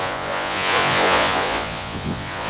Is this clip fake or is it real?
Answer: fake